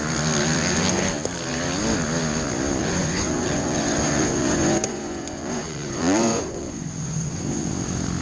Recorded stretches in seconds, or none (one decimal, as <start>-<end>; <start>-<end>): 0.0-2.8; 7.7-8.2